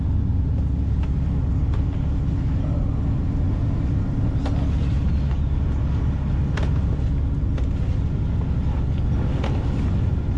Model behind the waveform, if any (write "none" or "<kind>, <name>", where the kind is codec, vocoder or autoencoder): none